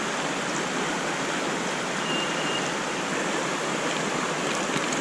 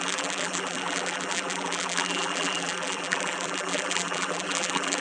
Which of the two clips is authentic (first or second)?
first